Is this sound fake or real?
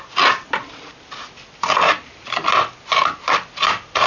real